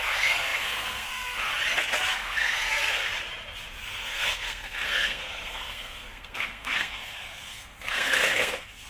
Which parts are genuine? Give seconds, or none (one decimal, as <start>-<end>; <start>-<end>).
1.5-2.1; 3.1-3.8